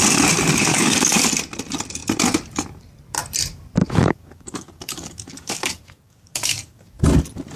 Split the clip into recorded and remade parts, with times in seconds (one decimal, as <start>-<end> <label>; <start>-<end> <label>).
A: 0.0-0.7 recorded; 0.7-1.3 remade; 1.3-3.8 recorded; 3.8-7.0 remade; 7.0-7.6 recorded